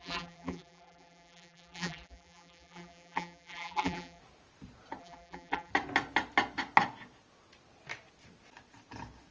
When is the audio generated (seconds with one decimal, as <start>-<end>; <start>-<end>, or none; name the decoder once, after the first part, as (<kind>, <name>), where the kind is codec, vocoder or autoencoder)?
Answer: 0.0-4.2 (vocoder, BigVGAN v2); 5.0-5.7